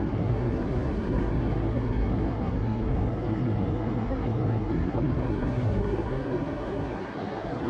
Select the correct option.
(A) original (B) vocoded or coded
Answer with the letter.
B